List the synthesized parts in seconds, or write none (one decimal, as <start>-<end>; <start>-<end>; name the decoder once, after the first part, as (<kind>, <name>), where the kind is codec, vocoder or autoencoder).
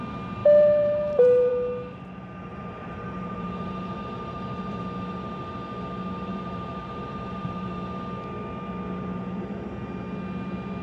0.4-1.5 (vocoder, BigVGAN v2); 2.5-4.8; 6.3-7.7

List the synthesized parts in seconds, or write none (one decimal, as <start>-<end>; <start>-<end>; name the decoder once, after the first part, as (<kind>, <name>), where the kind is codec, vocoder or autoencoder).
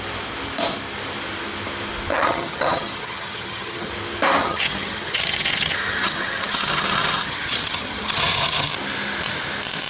2.1-3.9 (vocoder, HiFi-GAN); 4.4-8.7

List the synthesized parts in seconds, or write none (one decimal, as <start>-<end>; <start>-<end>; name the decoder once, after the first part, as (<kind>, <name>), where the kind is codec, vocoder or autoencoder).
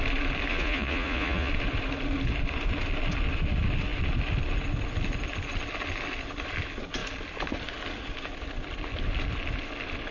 0.5-1.5 (vocoder, Vocos)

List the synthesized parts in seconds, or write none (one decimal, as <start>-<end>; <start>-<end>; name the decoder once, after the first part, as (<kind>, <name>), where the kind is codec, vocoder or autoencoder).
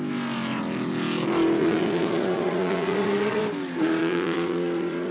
1.6-3.4 (vocoder, Vocos); 4.0-5.1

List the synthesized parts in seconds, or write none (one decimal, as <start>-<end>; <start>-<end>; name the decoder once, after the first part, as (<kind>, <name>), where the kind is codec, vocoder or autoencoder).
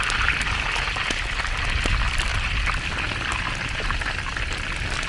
none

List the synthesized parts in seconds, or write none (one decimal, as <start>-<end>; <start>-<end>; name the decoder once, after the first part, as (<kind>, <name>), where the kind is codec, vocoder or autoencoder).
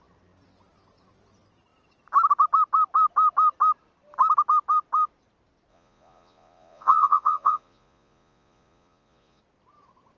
5.7-9.4 (vocoder, Vocos)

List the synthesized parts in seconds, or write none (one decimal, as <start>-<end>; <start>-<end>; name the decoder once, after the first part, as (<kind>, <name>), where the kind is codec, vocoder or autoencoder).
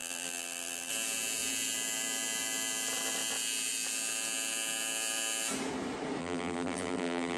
0.0-0.9 (vocoder, BigVGAN v2); 6.2-7.4